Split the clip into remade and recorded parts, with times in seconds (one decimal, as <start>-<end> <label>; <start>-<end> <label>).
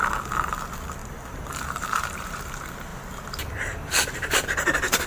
0.0-1.0 recorded; 1.0-2.5 remade; 2.5-5.1 recorded